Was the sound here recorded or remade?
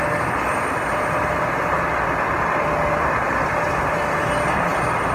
recorded